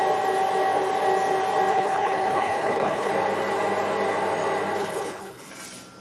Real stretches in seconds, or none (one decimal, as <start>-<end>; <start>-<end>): 0.0-1.7; 3.1-4.8; 5.5-6.0